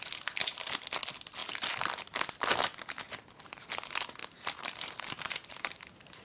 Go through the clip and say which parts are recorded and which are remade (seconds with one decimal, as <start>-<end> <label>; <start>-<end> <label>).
0.0-0.4 recorded; 0.4-0.9 remade; 0.9-4.2 recorded; 4.2-5.8 remade; 5.8-6.2 recorded